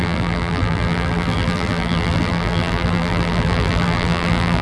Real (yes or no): no